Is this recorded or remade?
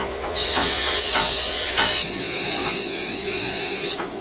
remade